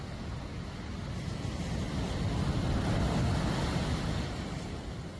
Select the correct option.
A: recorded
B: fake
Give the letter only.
A